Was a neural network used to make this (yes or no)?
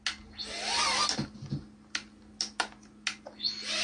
no